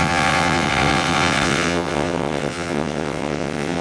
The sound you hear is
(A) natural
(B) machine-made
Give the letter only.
B